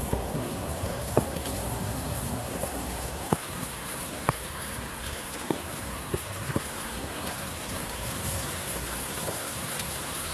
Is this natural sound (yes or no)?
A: no